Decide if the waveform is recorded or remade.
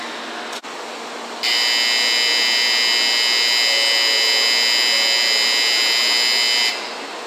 recorded